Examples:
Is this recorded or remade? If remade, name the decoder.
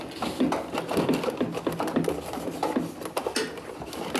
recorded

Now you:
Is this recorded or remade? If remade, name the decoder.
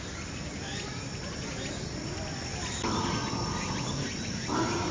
recorded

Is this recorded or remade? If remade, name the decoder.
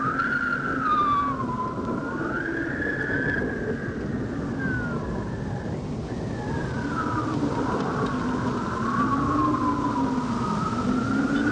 recorded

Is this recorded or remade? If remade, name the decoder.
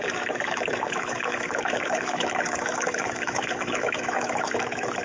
remade, autoencoder, DAC-VAE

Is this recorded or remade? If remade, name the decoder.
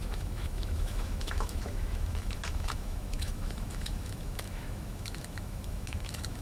remade, autoencoder, DAC-VAE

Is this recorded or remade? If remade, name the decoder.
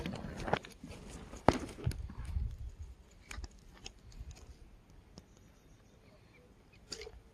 recorded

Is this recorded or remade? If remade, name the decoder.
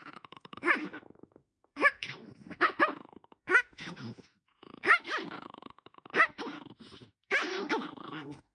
remade, autoencoder, DAC-VAE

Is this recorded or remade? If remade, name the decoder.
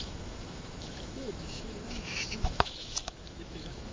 remade, autoencoder, DAC-VAE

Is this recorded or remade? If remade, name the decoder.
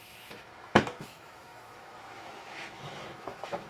remade, autoencoder, DAC-VAE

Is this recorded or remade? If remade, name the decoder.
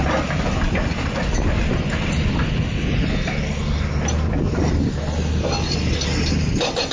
recorded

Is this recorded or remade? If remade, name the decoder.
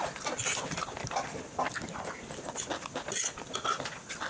recorded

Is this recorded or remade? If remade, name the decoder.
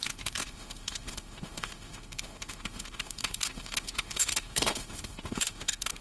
remade, autoencoder, DAC-VAE